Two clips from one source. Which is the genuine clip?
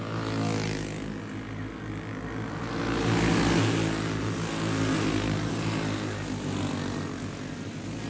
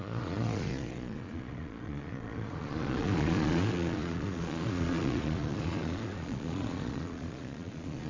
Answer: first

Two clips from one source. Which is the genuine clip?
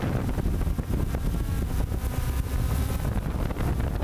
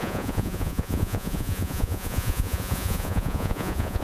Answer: first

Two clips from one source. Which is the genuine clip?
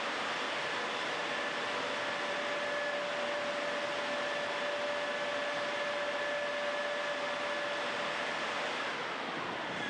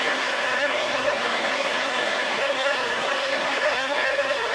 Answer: first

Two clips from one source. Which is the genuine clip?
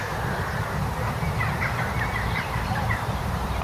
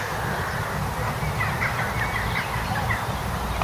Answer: second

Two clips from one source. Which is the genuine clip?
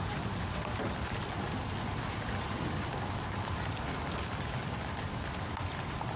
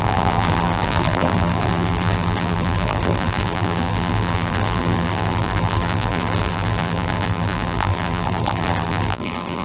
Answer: first